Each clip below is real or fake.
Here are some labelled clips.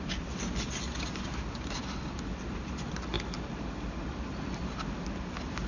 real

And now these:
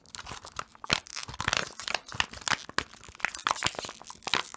real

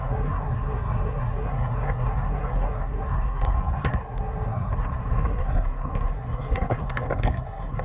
fake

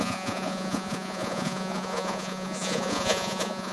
fake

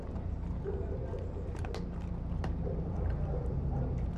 real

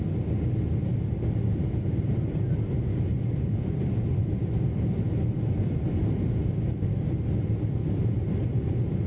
real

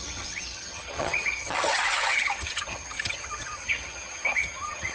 fake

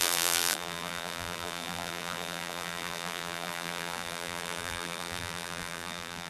fake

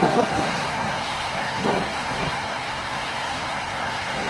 fake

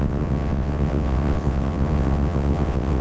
fake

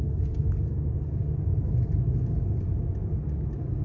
real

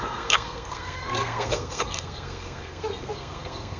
fake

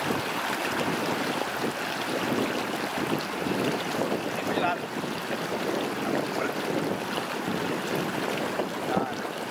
real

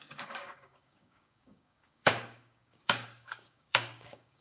fake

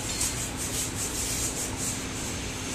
real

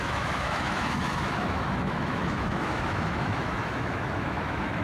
fake